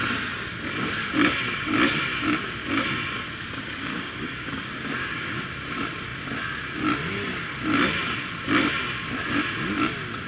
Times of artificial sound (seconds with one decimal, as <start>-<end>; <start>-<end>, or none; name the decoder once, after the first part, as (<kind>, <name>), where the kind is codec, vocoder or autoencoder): 3.9-5.4 (codec, DAC)